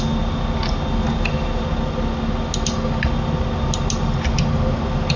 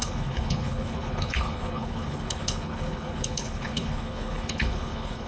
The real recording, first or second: first